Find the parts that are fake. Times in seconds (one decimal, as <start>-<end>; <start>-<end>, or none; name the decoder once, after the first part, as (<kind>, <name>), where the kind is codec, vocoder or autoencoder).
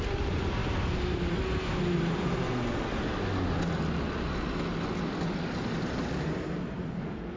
none